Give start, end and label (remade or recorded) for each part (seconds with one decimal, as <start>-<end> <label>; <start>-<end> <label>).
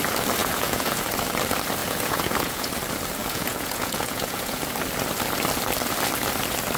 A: 0.0-0.4 recorded; 0.4-1.0 remade; 1.0-1.8 recorded; 1.8-2.7 remade; 2.7-3.2 recorded; 3.2-4.6 remade; 4.6-6.8 recorded